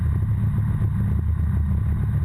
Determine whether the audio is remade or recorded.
recorded